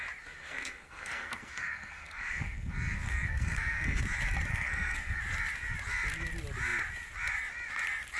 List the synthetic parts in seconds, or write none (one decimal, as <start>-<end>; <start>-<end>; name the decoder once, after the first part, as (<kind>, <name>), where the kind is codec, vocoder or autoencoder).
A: 0.4-4.0 (codec, SNAC); 4.5-5.2